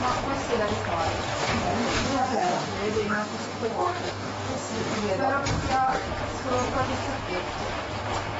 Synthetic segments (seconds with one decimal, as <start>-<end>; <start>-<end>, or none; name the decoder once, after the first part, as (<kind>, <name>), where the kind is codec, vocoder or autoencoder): 1.3-5.1 (codec, DAC)